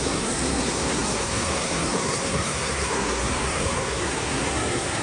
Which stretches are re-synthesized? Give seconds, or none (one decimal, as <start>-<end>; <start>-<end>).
0.0-5.0